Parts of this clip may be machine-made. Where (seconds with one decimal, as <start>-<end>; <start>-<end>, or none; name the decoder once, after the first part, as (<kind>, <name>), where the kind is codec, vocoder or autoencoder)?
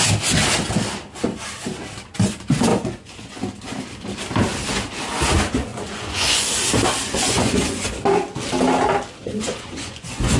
2.7-3.4 (vocoder, Vocos); 5.7-6.5; 7.0-7.9; 9.2-10.4